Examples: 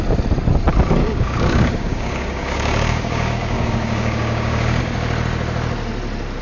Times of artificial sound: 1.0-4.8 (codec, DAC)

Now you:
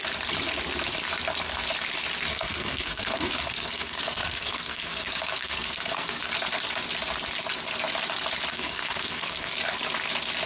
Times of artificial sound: 2.3-6.3 (codec, SNAC); 8.5-9.6

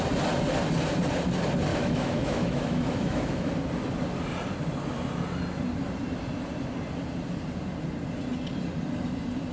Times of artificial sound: 1.7-3.5 (autoencoder, DAC-VAE)

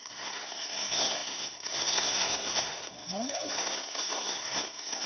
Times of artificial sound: 0.0-5.1 (codec, SNAC)

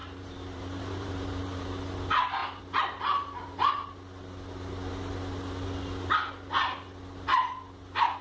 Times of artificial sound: 0.0-1.8 (vocoder, BigVGAN v2)

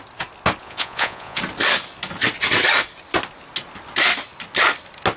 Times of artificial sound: 0.6-1.4 (vocoder, Vocos)